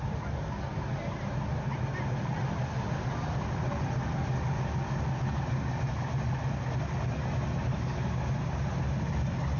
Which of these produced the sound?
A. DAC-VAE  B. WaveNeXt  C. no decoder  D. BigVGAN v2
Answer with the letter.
C